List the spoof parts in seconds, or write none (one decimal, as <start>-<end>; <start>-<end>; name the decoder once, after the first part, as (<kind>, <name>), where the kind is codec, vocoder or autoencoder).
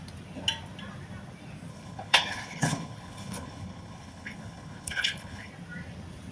1.7-5.5 (codec, HILCodec)